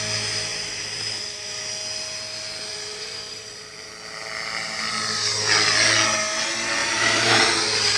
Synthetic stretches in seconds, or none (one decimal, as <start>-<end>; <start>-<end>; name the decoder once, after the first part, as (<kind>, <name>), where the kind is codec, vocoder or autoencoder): 0.5-1.6 (vocoder, BigVGAN v2); 2.7-3.9; 6.8-7.4